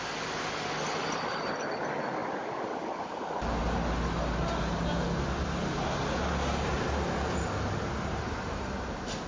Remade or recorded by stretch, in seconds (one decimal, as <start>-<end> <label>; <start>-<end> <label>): 0.0-9.3 recorded